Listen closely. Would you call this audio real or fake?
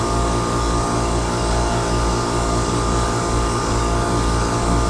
fake